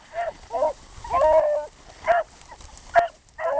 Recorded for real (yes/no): yes